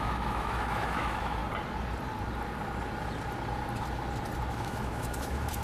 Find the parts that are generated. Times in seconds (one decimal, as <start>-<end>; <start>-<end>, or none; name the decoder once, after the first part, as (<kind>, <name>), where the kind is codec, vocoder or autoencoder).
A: 0.0-1.4 (autoencoder, DAC-VAE); 4.5-5.6